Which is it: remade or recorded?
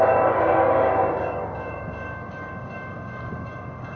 remade